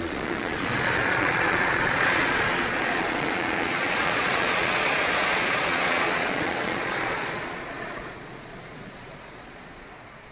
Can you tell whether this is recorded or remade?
remade